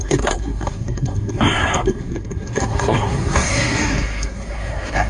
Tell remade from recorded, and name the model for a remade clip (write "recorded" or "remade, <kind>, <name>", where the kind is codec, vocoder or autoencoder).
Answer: remade, codec, SNAC